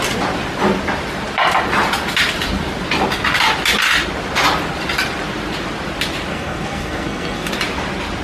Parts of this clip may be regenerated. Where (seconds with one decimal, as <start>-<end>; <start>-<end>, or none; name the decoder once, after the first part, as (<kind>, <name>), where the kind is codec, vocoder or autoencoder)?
6.3-7.5 (codec, SNAC)